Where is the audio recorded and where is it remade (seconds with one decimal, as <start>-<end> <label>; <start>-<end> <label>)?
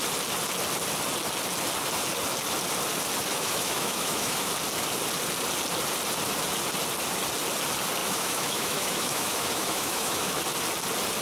0.0-3.3 recorded; 3.3-4.5 remade; 4.5-8.0 recorded; 8.0-10.4 remade; 10.4-11.2 recorded